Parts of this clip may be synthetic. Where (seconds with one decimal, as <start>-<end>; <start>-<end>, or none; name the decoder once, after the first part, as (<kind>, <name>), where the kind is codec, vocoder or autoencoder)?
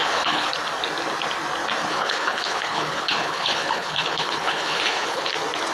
0.0-0.5 (codec, HILCodec); 1.9-5.3